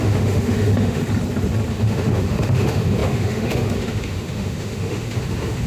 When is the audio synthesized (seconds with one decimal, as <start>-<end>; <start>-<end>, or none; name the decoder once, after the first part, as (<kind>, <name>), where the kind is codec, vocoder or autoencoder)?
0.0-1.0 (autoencoder, DAC-VAE); 1.7-5.7

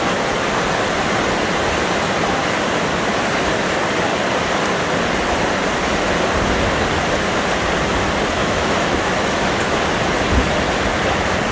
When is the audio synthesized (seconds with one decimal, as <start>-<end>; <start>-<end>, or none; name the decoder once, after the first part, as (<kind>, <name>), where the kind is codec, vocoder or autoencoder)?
8.4-9.8 (autoencoder, DAC-VAE)

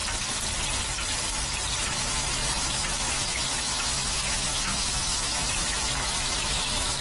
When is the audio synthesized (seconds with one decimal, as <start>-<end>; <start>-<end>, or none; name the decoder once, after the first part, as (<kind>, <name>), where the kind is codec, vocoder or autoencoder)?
1.8-7.0 (autoencoder, DAC-VAE)

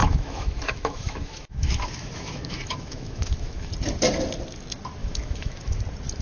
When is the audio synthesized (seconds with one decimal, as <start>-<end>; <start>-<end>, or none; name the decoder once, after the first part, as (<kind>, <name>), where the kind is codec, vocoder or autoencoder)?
0.0-3.7 (autoencoder, DAC-VAE); 5.0-5.8

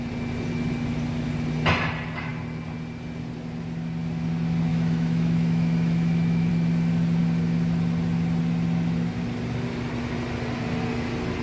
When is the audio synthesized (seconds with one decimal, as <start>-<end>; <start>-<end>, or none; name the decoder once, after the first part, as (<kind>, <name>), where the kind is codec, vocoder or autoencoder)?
4.7-6.5 (autoencoder, DAC-VAE)

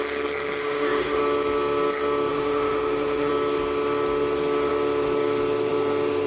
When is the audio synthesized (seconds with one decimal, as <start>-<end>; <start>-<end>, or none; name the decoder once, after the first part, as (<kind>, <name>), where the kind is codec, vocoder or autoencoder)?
0.6-1.2 (autoencoder, DAC-VAE); 2.3-3.3

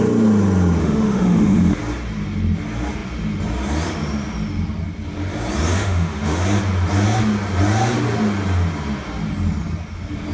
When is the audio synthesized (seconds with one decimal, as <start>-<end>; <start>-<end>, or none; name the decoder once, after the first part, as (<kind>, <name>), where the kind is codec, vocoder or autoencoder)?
0.8-1.8 (autoencoder, DAC-VAE); 5.7-6.4